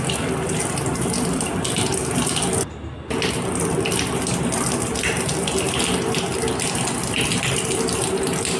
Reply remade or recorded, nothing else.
recorded